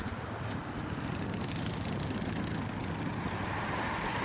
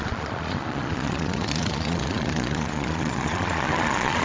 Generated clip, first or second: second